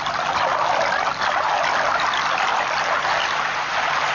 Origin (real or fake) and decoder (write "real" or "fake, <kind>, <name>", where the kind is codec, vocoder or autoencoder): real